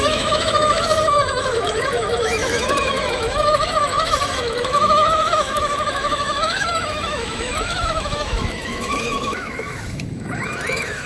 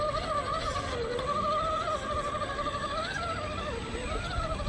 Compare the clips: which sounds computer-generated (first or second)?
first